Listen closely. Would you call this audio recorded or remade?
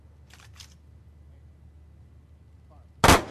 recorded